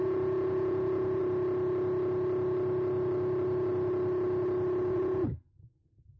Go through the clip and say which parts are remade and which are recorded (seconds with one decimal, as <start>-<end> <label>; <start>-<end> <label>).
0.0-1.2 remade; 1.2-4.9 recorded; 4.9-6.2 remade